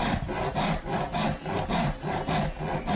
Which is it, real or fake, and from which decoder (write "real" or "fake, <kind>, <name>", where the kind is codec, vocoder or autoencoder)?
real